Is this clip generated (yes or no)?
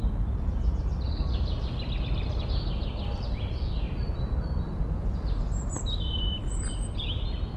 no